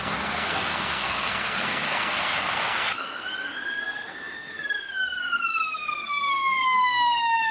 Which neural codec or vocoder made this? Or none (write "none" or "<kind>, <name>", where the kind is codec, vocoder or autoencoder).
codec, SNAC